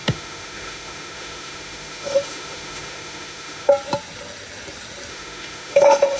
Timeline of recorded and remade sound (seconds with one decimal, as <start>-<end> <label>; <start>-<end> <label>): 0.0-3.7 remade; 3.7-5.1 recorded; 5.1-6.2 remade